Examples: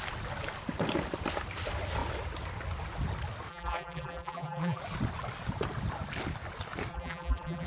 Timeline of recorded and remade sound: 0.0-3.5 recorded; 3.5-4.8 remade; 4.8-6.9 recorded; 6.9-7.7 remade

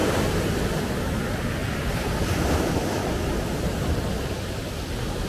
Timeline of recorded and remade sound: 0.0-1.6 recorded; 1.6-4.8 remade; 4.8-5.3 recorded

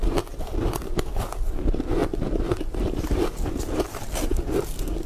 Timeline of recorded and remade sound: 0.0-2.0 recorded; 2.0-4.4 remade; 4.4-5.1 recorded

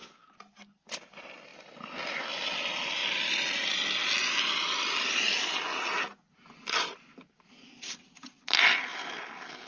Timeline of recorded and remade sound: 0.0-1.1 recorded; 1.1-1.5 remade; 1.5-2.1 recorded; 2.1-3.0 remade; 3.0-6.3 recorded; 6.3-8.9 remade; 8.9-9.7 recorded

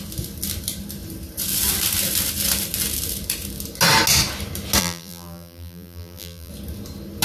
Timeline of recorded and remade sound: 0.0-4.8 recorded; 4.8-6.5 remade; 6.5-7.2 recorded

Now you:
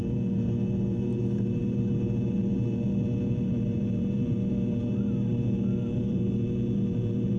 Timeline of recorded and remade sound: 0.0-7.4 remade